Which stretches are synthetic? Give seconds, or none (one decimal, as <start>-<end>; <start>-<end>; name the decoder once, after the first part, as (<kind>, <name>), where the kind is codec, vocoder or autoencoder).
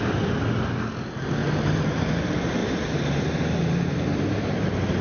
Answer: 1.4-2.1 (vocoder, BigVGAN v2); 2.6-5.0